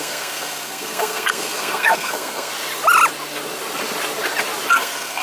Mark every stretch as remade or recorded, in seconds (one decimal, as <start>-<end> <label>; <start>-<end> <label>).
0.0-2.5 remade; 2.5-4.7 recorded; 4.7-5.2 remade